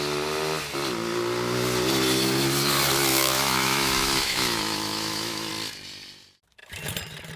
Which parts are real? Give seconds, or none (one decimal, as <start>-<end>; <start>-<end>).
0.0-3.1; 5.5-7.4